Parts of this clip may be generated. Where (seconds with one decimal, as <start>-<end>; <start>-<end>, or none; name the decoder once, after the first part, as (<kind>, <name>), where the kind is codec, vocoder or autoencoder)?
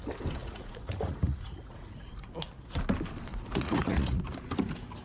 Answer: 0.4-2.3 (vocoder, Vocos); 3.3-4.2